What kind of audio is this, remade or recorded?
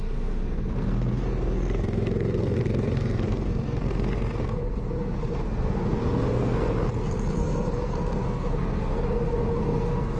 remade